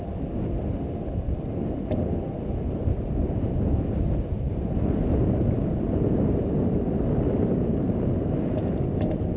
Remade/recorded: recorded